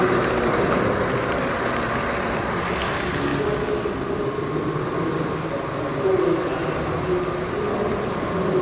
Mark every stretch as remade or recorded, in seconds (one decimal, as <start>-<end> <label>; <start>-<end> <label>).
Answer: 0.0-8.6 recorded